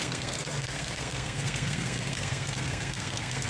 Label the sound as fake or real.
fake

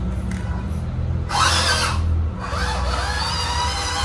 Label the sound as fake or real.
real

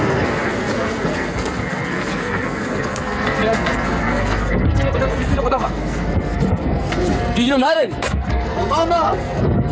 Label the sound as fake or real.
fake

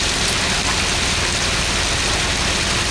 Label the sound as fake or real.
real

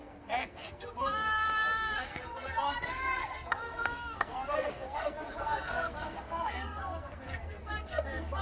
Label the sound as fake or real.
fake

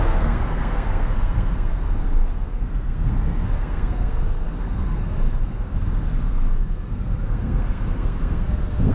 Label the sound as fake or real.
fake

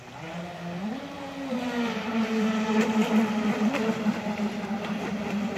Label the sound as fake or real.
real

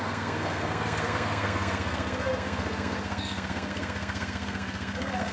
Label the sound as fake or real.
fake